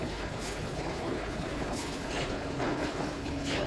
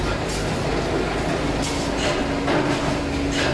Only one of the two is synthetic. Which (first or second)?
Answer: first